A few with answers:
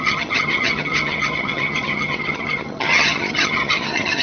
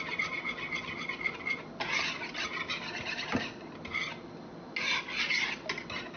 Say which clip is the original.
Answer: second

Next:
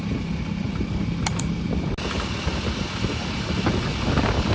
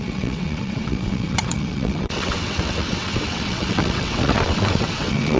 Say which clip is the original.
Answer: first